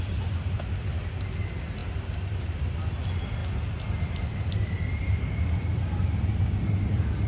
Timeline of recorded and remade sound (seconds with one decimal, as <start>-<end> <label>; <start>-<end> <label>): 0.0-7.3 recorded